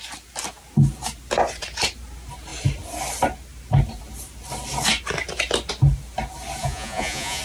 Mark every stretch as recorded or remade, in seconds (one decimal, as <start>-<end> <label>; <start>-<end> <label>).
0.0-6.6 recorded; 6.6-7.4 remade